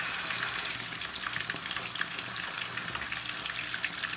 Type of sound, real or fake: real